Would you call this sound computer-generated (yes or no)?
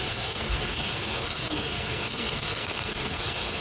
yes